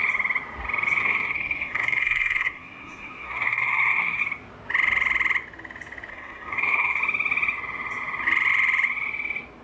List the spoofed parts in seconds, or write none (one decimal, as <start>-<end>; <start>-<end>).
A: 1.0-4.2; 6.1-7.0